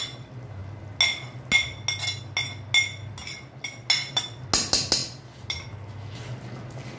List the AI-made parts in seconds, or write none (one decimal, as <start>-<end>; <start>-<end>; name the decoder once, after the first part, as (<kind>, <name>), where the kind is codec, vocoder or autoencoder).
none

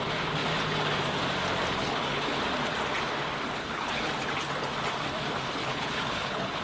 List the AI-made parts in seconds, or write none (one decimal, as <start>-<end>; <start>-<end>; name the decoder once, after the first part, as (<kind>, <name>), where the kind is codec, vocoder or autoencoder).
1.8-2.4 (codec, HILCodec); 3.6-4.1; 5.6-6.6

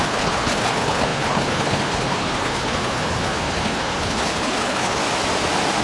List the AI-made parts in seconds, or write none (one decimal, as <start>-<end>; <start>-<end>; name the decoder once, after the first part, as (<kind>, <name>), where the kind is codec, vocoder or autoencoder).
0.0-5.0 (codec, HILCodec)

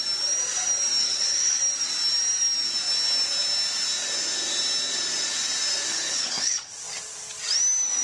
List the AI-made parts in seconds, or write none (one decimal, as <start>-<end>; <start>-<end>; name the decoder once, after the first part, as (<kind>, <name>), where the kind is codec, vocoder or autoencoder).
1.0-1.6 (codec, HILCodec); 5.9-6.7

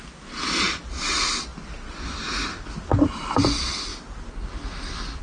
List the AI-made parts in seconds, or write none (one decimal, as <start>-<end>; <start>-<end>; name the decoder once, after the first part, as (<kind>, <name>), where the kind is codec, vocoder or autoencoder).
none

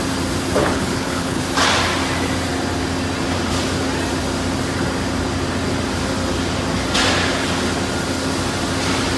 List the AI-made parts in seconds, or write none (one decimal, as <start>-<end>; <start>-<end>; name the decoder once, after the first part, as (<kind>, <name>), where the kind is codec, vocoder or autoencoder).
0.6-1.4 (codec, HILCodec)

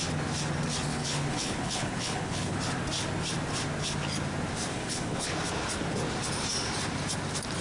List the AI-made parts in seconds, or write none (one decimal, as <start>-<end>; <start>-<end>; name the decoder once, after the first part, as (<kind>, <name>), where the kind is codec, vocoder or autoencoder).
0.9-2.6 (codec, HILCodec); 4.7-5.3

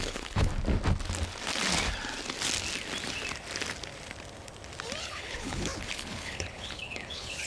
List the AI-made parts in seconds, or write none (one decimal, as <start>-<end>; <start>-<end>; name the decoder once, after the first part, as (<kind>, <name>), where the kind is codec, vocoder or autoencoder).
0.0-0.5 (codec, HILCodec); 5.0-7.5